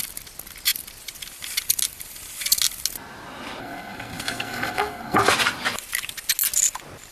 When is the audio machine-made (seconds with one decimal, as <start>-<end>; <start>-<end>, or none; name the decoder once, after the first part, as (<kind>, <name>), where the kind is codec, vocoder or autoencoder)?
3.6-5.2 (codec, SNAC)